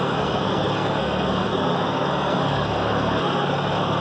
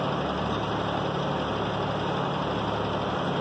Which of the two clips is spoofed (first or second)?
first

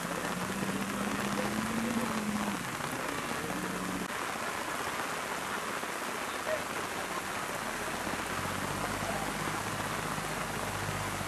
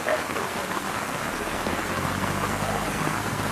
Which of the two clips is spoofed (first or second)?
second